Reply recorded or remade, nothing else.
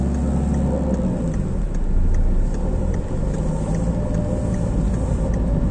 recorded